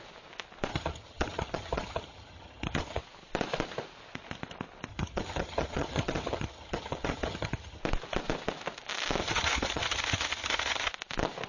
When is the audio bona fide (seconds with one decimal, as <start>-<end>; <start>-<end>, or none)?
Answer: 0.0-0.7; 3.0-4.9; 7.8-9.2; 10.9-11.5